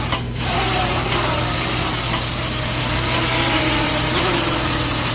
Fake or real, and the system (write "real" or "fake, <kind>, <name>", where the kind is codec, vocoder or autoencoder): fake, vocoder, BigVGAN v2